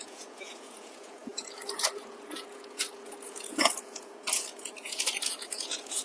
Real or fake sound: fake